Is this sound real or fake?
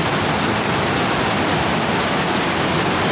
real